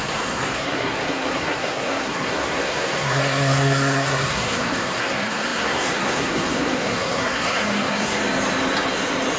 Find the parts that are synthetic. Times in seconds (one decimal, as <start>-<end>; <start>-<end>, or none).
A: 0.0-8.2